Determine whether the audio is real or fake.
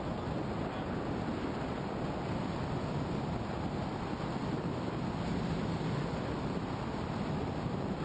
real